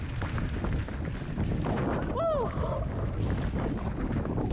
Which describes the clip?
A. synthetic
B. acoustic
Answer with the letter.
B